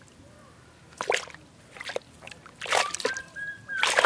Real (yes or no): yes